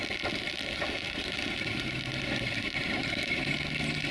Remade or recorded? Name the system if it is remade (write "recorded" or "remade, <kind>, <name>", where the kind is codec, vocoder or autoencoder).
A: recorded